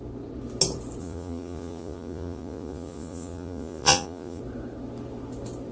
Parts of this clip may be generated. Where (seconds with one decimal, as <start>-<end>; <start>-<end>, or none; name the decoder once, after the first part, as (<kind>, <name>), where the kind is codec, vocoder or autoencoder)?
1.0-4.4 (vocoder, Vocos)